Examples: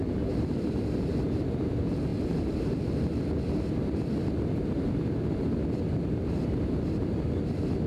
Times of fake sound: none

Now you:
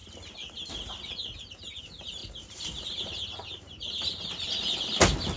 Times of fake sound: none

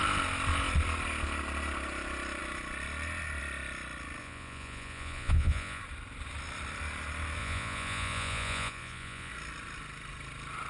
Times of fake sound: 4.2-5.8 (vocoder, Vocos); 7.4-9.3

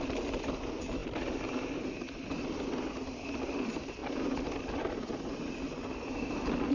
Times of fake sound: none

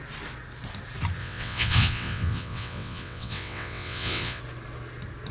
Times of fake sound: 1.2-4.4 (vocoder, WaveNeXt)

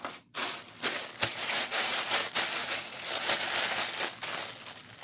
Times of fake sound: 1.3-2.1 (vocoder, Vocos); 2.6-3.1

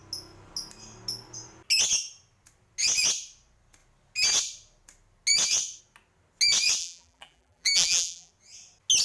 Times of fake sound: 6.8-8.3 (vocoder, BigVGAN v2)